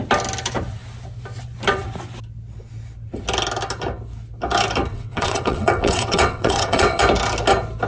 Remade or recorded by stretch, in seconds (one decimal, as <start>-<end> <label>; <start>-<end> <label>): 0.0-4.9 recorded; 4.9-7.0 remade; 7.0-7.9 recorded